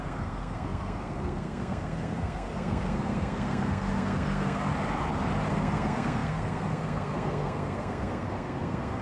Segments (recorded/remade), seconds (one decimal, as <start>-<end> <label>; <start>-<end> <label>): 0.0-4.7 remade; 4.7-5.5 recorded; 5.5-9.0 remade